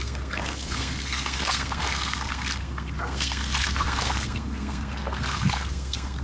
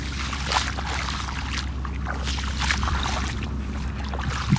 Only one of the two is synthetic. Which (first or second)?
first